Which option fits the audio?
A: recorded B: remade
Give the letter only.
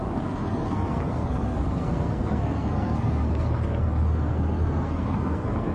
B